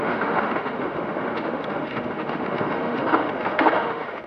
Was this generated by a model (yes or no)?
yes